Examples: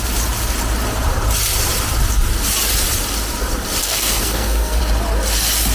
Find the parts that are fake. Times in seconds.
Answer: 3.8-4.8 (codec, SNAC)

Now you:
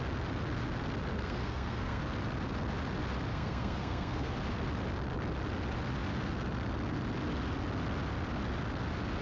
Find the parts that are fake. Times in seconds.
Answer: 1.1-2.0 (codec, SNAC); 3.3-4.3

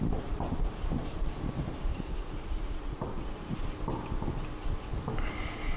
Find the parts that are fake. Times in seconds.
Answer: 1.9-3.3 (vocoder, Vocos)